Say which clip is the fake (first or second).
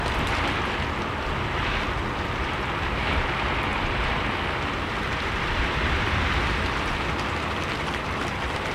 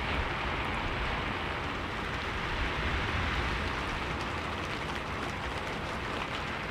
first